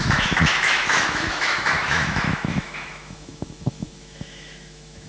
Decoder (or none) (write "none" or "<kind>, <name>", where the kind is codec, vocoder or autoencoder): autoencoder, DAC-VAE